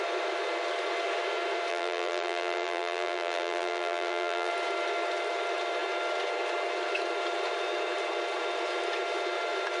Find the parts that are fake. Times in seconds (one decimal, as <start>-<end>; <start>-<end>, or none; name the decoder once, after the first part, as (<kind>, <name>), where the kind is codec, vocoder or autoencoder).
1.7-4.5 (vocoder, BigVGAN v2)